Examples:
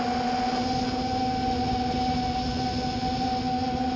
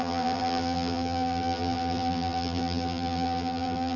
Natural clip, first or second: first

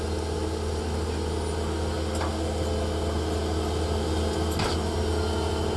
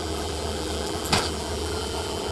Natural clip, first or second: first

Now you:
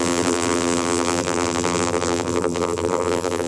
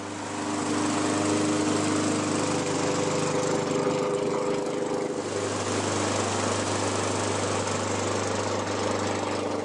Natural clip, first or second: second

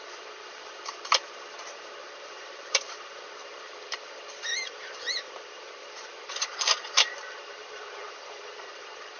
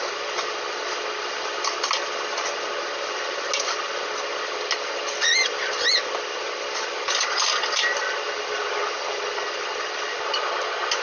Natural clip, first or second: second